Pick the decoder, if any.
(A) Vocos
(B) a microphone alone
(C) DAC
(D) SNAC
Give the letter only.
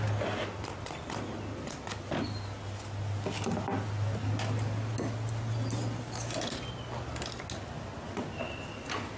B